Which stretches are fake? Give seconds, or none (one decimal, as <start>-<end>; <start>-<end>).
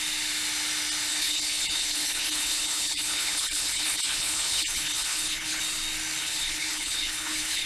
1.1-5.6; 6.2-7.7